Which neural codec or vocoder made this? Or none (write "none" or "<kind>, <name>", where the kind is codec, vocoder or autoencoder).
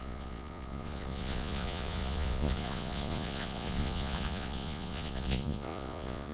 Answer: vocoder, Vocos